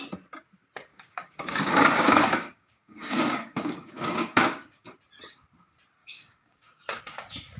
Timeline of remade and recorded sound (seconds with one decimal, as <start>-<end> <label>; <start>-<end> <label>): 0.0-0.9 recorded; 0.9-4.9 remade; 4.9-6.0 recorded; 6.0-7.0 remade; 7.0-7.6 recorded